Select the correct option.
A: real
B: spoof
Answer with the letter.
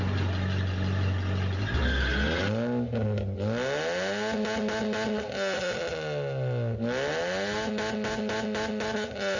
A